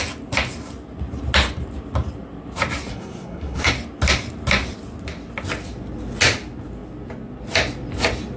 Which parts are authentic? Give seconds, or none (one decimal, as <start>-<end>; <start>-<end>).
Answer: 0.0-2.9; 3.7-8.4